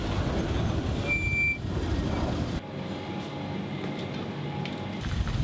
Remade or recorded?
recorded